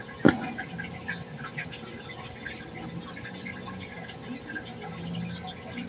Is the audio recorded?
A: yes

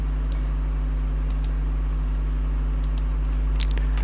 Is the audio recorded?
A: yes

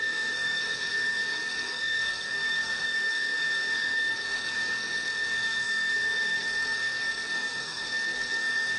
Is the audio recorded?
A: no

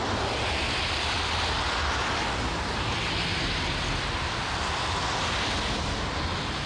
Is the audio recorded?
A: yes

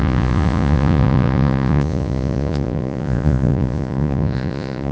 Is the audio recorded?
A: no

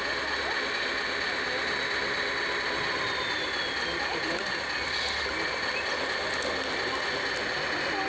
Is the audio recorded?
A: yes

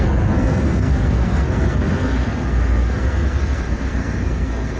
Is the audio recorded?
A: no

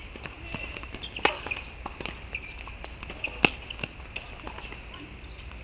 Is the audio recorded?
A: yes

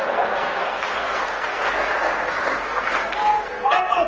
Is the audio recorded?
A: no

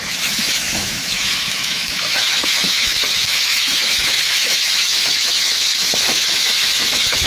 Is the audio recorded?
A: no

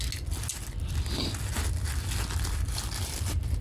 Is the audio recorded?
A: yes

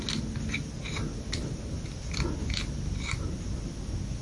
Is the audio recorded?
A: yes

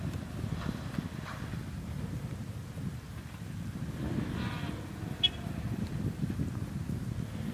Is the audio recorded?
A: yes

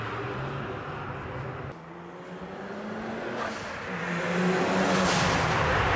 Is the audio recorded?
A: yes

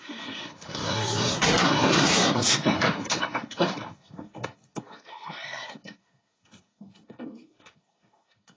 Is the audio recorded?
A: no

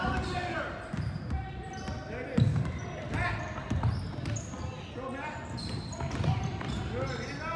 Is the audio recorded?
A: yes